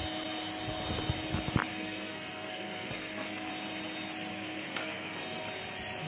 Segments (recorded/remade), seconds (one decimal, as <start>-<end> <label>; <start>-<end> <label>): 0.0-1.7 recorded; 1.7-3.5 remade; 3.5-4.3 recorded; 4.3-5.4 remade; 5.4-6.1 recorded